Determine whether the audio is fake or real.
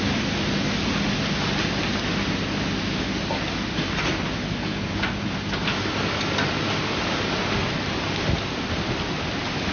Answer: real